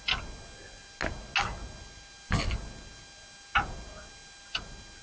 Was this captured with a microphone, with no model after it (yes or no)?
yes